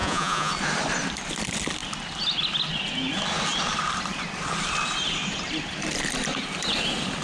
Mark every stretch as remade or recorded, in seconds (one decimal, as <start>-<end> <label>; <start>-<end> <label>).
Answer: 0.0-0.5 remade; 0.5-7.2 recorded